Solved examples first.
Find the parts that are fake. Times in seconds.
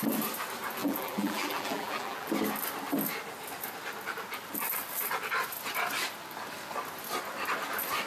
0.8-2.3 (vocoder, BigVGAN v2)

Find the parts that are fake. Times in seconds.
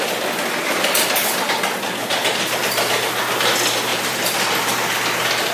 2.0-2.6 (vocoder, BigVGAN v2); 3.9-4.7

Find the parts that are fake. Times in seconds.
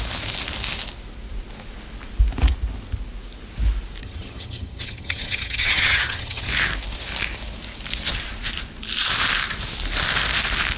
4.0-6.5 (vocoder, HiFi-GAN)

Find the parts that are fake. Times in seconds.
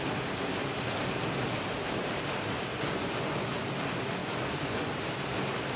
2.7-3.6 (vocoder, Vocos); 4.2-4.9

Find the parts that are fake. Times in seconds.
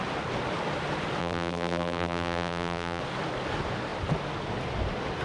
1.2-3.0 (vocoder, BigVGAN v2)